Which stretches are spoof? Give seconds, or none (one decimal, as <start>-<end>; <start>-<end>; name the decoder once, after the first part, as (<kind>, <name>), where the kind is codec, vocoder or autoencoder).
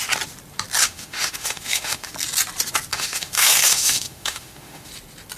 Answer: 0.8-2.1 (autoencoder, DAC-VAE); 2.9-4.9